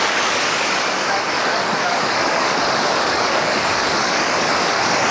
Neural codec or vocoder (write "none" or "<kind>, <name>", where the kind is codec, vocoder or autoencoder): codec, DAC